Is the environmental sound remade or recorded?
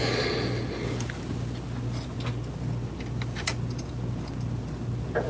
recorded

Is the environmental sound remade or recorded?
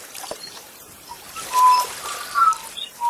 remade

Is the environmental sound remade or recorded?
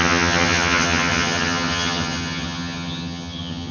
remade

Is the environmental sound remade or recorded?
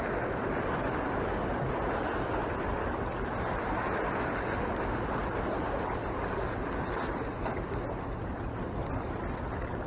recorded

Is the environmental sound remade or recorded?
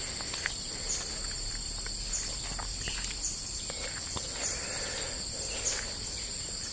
recorded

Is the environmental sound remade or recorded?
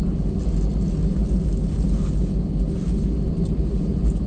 recorded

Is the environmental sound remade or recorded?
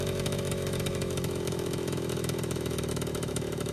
remade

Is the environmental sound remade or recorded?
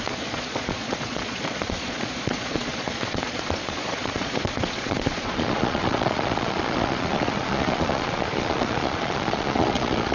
remade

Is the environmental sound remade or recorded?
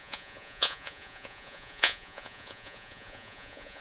remade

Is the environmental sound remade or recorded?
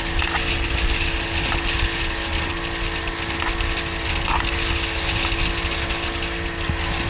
recorded